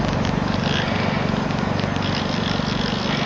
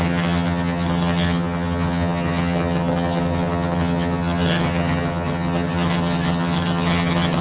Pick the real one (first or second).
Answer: first